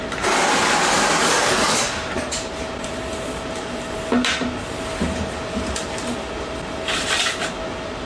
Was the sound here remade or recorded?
recorded